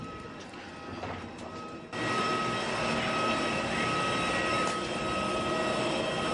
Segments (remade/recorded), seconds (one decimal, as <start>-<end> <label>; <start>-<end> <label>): 0.0-0.6 remade; 0.6-6.3 recorded